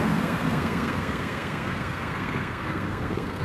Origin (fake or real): fake